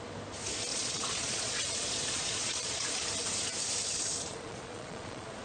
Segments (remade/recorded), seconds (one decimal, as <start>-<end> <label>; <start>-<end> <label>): 0.0-0.7 recorded; 0.7-2.9 remade; 2.9-4.3 recorded; 4.3-5.4 remade